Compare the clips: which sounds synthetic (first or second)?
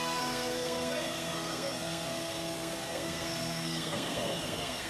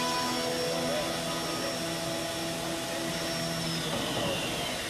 first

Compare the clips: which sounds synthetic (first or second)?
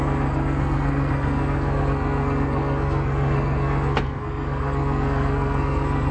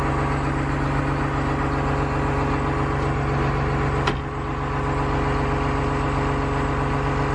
first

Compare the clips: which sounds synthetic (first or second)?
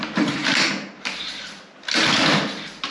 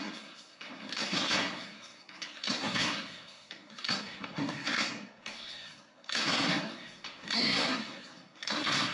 second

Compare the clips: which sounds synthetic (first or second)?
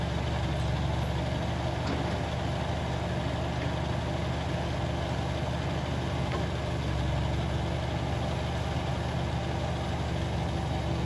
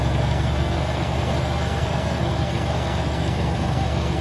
second